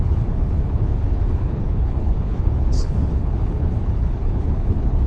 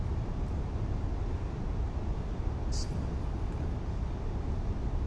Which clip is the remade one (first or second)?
first